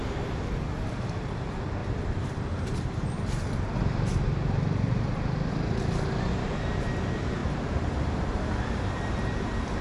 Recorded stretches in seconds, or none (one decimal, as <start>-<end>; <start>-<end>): 0.0-1.8; 5.1-7.4; 8.6-9.8